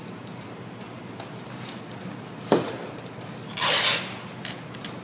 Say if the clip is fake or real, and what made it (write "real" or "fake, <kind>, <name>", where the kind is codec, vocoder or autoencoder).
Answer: real